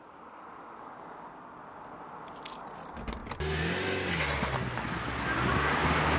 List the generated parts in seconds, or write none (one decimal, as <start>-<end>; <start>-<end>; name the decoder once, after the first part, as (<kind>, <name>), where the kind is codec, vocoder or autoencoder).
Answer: none